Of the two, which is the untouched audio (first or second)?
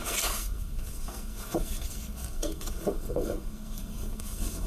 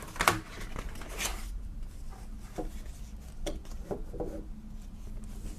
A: second